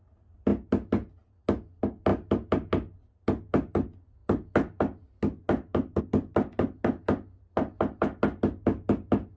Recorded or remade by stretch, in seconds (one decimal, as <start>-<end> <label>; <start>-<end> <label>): 0.0-9.4 recorded